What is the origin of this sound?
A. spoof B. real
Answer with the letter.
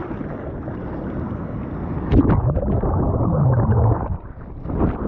B